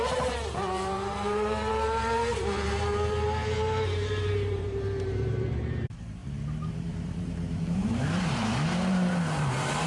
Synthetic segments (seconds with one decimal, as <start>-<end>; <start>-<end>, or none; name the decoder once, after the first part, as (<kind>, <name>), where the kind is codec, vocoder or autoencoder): 0.0-6.2 (vocoder, BigVGAN v2); 6.7-9.9